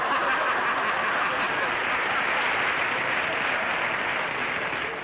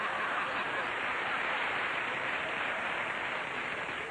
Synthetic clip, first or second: second